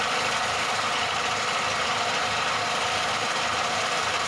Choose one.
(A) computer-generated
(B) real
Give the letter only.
B